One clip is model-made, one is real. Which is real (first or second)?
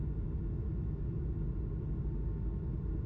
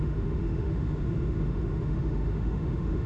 first